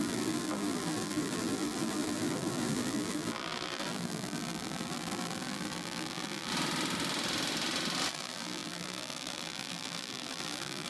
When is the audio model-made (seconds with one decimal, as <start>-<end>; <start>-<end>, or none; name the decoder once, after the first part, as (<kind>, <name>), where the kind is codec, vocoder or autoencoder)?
0.0-6.5 (vocoder, BigVGAN v2); 8.1-10.9